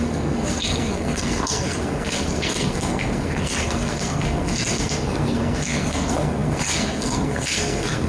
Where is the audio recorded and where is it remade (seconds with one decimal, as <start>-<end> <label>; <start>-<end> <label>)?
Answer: 0.0-8.1 remade